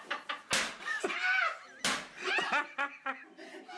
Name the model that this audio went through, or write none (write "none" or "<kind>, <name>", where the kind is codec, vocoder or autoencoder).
none